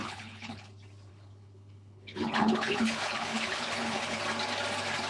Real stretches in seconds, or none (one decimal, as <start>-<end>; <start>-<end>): 0.7-1.1; 4.2-5.1